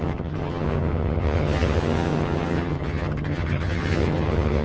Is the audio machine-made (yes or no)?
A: yes